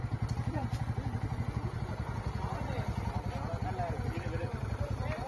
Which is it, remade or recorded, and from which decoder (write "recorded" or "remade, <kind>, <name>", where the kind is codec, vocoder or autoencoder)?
recorded